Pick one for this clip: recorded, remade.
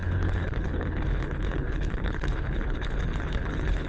remade